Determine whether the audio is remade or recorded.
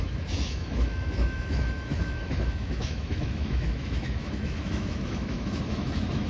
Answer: remade